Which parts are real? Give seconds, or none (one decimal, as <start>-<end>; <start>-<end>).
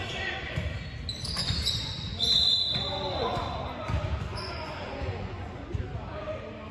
0.0-1.4; 3.5-4.3; 5.8-6.7